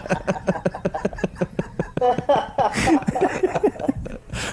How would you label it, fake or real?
fake